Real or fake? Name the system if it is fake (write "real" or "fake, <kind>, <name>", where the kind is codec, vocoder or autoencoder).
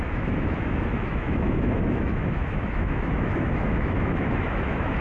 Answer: fake, autoencoder, DAC-VAE